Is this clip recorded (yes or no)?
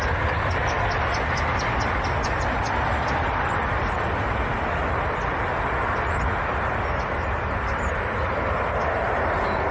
yes